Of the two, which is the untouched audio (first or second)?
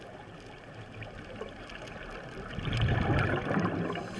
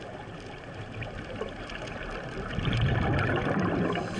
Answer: first